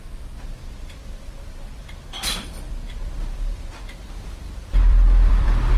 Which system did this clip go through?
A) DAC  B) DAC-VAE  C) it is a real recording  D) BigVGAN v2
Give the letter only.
D